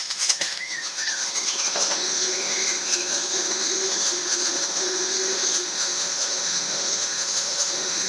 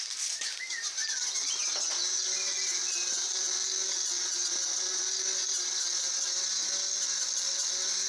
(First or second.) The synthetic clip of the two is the first